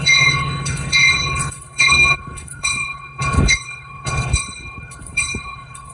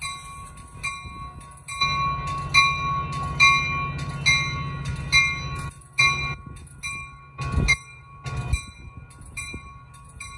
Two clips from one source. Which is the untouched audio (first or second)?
second